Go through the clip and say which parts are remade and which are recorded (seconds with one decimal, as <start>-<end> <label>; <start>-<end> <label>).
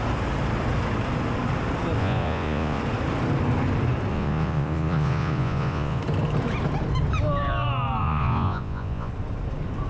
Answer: 0.0-2.0 recorded; 2.0-2.8 remade; 2.8-4.1 recorded; 4.1-6.0 remade; 6.0-8.0 recorded; 8.0-9.1 remade; 9.1-9.9 recorded